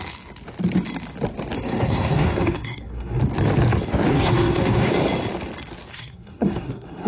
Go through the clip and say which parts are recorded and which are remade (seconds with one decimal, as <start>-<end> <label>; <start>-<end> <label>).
0.0-1.6 recorded; 1.6-3.2 remade; 3.2-4.1 recorded; 4.1-4.9 remade; 4.9-5.9 recorded; 5.9-7.1 remade